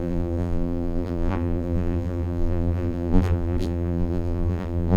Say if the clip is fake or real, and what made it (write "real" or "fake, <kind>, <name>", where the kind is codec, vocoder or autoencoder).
fake, vocoder, BigVGAN v2